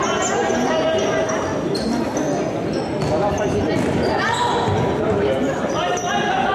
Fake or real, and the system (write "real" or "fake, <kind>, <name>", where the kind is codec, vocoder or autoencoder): real